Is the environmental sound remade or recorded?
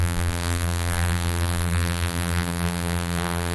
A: remade